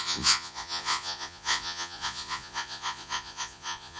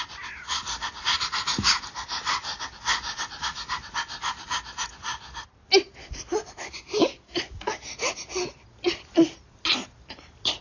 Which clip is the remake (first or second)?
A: first